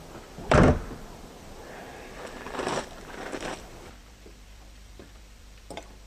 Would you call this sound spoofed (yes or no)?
yes